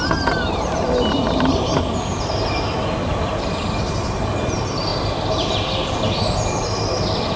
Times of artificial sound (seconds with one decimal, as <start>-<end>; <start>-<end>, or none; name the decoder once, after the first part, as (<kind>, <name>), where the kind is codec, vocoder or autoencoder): none

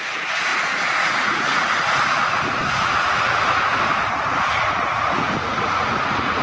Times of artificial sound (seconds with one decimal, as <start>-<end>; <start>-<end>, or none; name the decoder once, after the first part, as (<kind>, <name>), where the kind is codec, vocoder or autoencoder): 0.0-6.4 (vocoder, Vocos)

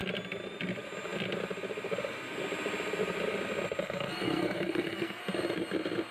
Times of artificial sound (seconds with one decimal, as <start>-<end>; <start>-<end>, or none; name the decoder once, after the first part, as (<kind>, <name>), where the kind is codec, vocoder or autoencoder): 3.8-5.2 (codec, SNAC)

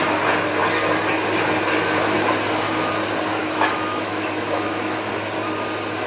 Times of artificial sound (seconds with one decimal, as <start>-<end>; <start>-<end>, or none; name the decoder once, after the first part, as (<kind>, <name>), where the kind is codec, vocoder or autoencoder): 3.4-5.1 (autoencoder, DAC-VAE)

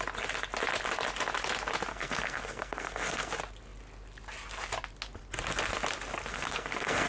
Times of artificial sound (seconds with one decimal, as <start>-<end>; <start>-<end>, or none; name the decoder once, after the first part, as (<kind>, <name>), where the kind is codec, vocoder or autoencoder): 1.9-3.3 (codec, SNAC); 6.3-7.1

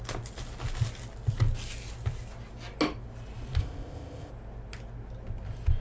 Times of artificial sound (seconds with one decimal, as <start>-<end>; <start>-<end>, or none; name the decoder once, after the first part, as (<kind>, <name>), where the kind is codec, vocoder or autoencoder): 3.6-4.3 (codec, ZipCodec)

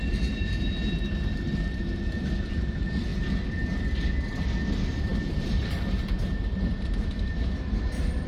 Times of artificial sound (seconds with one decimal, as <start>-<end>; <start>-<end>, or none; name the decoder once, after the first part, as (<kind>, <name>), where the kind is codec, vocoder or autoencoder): 5.1-8.3 (vocoder, BigVGAN v2)

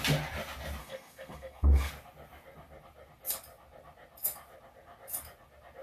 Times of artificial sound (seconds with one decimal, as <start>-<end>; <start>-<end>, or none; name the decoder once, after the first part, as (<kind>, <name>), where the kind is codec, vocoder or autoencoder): 0.8-1.9 (codec, SNAC)